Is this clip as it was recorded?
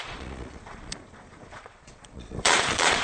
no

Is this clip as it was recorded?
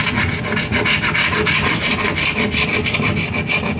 yes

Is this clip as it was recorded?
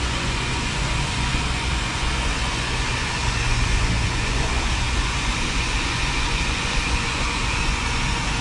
no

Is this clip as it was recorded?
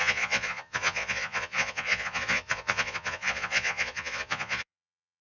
no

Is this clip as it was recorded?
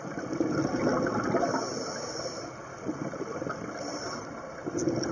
yes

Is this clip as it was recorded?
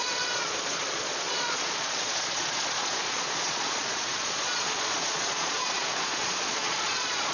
no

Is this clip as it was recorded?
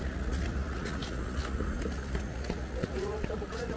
no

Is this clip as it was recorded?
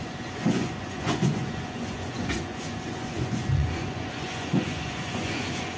no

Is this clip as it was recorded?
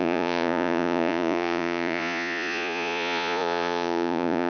no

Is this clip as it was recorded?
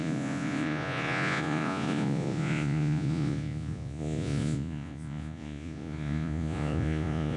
no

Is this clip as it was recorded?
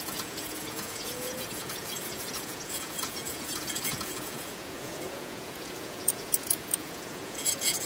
no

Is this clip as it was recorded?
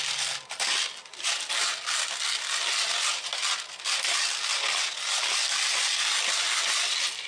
yes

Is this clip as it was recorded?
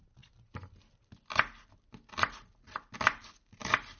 yes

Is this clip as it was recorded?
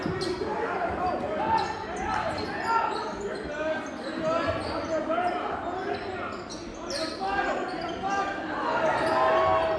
yes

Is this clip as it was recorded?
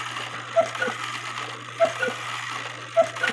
yes